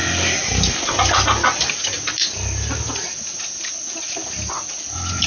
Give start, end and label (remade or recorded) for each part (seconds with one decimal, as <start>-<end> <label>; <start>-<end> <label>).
0.0-5.3 recorded